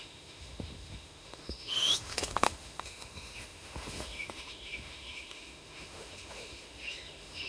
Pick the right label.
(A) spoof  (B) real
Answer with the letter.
A